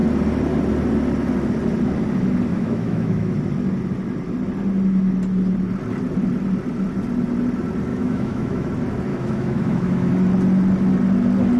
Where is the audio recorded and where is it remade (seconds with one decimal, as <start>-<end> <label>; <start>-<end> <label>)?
0.0-2.5 recorded; 2.5-3.3 remade; 3.3-7.9 recorded; 7.9-8.7 remade; 8.7-9.1 recorded; 9.1-10.1 remade; 10.1-11.6 recorded